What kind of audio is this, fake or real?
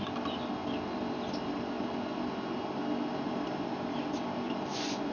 real